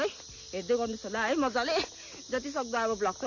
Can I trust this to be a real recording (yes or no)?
yes